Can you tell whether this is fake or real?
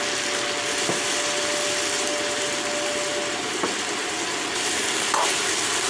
real